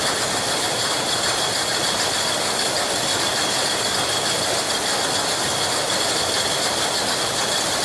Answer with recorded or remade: recorded